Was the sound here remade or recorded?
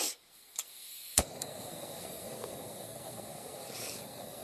remade